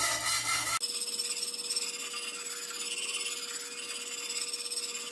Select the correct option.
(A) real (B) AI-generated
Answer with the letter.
A